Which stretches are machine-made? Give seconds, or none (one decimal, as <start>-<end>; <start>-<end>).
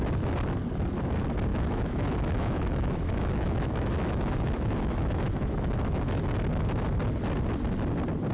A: 1.5-6.2